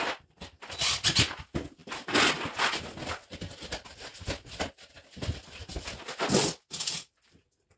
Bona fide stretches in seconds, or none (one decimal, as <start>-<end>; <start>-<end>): 0.0-7.8